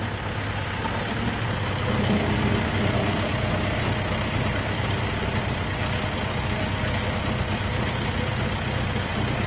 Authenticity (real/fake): fake